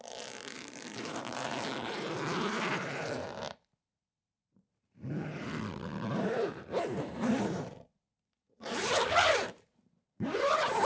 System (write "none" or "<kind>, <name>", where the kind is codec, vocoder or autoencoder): vocoder, BigVGAN v2